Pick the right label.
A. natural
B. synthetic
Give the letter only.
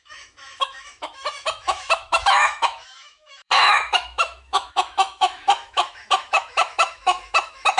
B